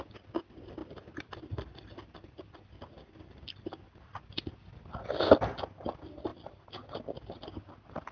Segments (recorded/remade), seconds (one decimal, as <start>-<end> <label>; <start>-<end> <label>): 0.0-0.8 recorded; 0.8-5.4 remade; 5.4-8.1 recorded